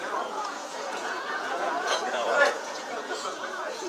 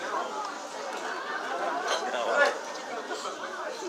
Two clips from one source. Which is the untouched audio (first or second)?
second